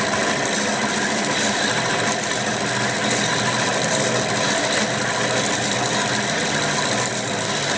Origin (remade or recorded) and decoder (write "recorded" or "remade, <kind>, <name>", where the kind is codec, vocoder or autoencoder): recorded